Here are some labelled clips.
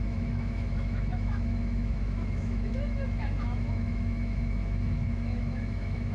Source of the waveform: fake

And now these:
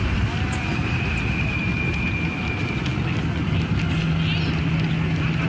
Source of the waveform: real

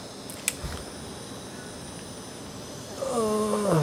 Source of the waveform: real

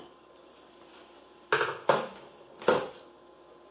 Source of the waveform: real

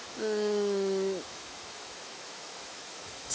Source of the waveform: fake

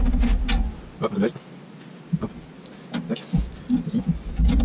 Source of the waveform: real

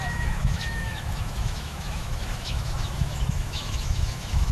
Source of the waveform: fake